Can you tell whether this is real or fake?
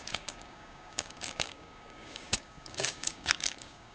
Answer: fake